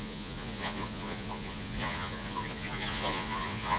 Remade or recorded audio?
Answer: remade